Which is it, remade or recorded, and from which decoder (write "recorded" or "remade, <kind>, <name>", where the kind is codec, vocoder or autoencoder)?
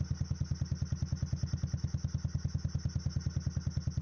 recorded